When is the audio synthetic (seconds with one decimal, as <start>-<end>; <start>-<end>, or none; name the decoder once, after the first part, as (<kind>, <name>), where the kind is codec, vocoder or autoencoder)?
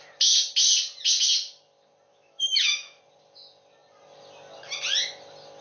2.1-3.0 (autoencoder, DAC-VAE)